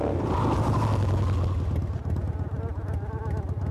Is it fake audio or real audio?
real